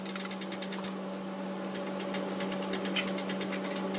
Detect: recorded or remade recorded